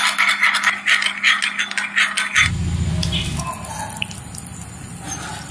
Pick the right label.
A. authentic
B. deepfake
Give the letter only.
A